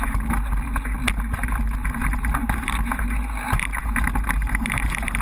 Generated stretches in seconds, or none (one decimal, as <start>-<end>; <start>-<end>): 1.8-5.2